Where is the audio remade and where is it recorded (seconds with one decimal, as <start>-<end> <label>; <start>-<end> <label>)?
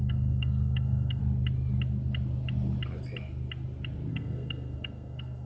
0.0-1.2 remade; 1.2-4.1 recorded; 4.1-5.5 remade